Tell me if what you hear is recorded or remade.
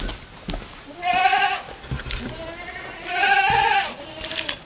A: recorded